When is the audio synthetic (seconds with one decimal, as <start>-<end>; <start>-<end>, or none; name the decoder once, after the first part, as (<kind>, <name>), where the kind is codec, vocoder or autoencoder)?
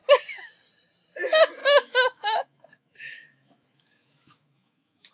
1.6-5.1 (autoencoder, DAC-VAE)